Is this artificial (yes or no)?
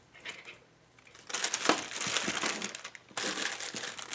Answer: no